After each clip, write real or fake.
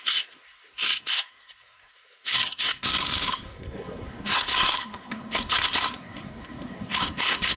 fake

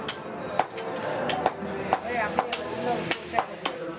real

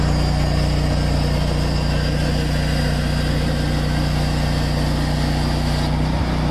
real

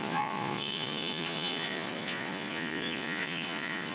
fake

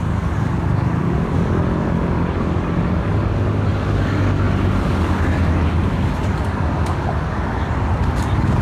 fake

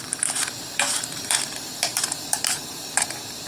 fake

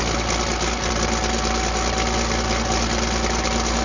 real